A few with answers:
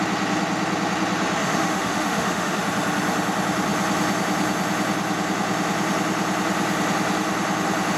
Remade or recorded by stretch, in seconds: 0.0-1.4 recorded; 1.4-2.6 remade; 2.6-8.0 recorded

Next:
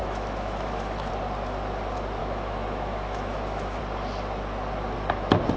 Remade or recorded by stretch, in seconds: 0.0-1.1 remade; 1.1-2.2 recorded; 2.2-3.8 remade; 3.8-5.6 recorded

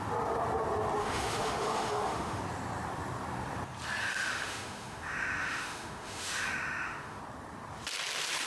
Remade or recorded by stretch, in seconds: 0.0-1.0 recorded; 1.0-2.4 remade; 2.4-4.0 recorded; 4.0-7.2 remade; 7.2-8.5 recorded

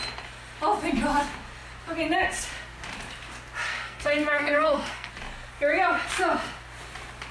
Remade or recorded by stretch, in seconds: 0.0-3.7 recorded; 3.7-5.1 remade; 5.1-7.3 recorded

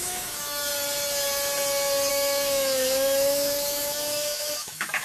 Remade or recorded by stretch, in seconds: 0.0-0.7 remade; 0.7-2.1 recorded; 2.1-5.0 remade

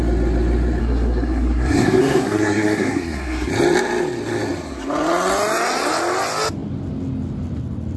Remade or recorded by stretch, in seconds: 0.0-0.8 recorded; 0.8-3.5 remade; 3.5-8.0 recorded

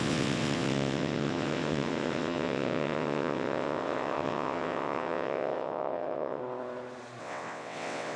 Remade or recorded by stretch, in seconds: 0.0-6.4 remade; 6.4-7.2 recorded; 7.2-8.2 remade